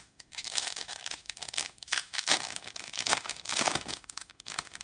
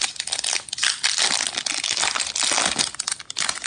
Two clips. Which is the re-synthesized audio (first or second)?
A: first